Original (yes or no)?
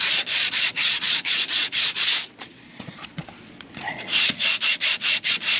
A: no